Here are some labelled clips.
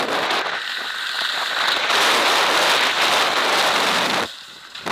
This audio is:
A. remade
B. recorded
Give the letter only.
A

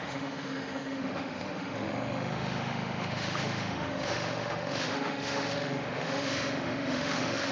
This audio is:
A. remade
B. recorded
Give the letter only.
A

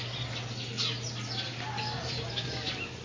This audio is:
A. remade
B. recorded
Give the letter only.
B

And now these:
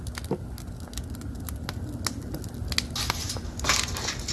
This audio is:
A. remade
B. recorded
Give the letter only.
B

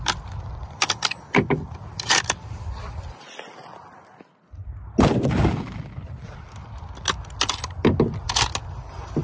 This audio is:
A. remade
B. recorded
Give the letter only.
B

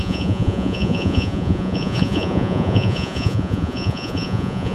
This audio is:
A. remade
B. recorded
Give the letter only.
A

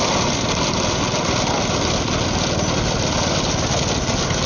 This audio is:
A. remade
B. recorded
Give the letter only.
B